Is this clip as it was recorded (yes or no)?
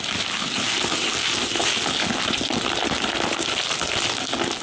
yes